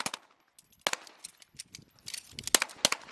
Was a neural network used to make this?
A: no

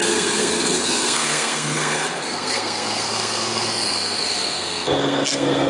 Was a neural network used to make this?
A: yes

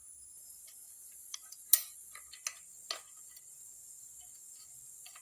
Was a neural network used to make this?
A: no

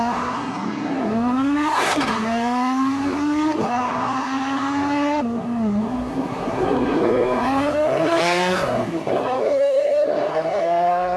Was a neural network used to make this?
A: yes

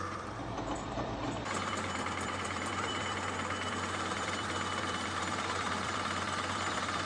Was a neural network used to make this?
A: yes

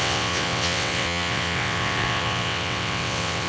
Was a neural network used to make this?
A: yes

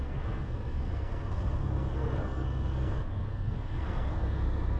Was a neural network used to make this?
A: yes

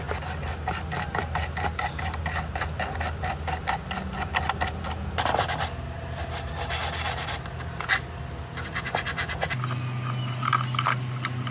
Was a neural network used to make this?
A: no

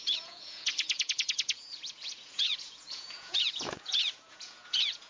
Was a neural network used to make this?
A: yes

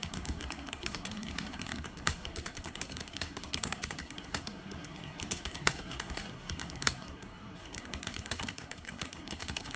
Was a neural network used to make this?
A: yes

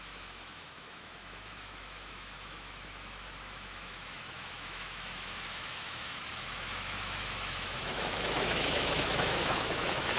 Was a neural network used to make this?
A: yes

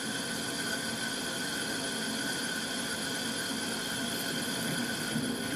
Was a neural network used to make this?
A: yes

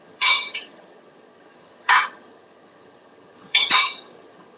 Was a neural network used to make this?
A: yes